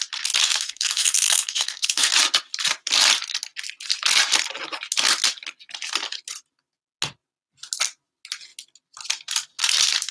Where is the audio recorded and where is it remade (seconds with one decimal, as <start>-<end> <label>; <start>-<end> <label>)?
0.0-0.4 recorded; 0.4-2.1 remade; 2.1-10.1 recorded